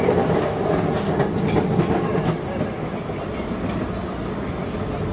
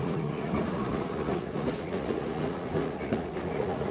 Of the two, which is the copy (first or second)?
second